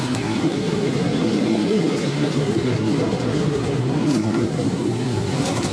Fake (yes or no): yes